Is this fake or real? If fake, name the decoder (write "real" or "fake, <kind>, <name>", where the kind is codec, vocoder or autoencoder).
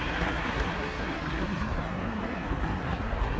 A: fake, codec, SNAC